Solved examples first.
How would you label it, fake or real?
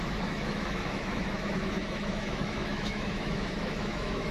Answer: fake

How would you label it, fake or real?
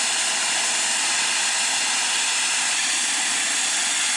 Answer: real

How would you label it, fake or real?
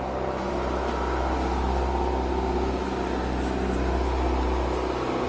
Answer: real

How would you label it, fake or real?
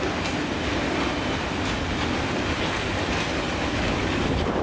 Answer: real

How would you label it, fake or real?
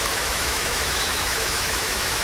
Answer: fake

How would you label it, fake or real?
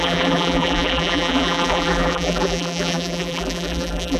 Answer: fake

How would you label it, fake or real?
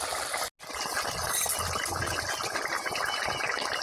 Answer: real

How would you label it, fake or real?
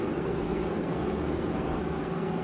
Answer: fake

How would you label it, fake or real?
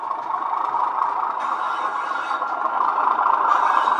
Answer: real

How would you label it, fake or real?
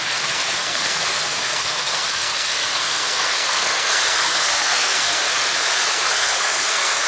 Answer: fake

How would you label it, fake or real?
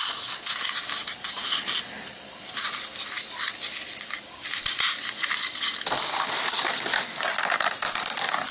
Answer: real